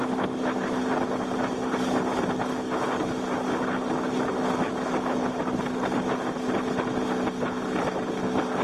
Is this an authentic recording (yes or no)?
yes